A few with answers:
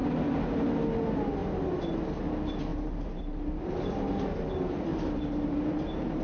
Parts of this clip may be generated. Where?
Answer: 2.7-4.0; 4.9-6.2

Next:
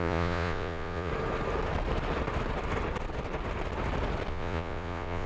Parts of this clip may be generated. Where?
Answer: 0.0-1.1; 4.3-5.3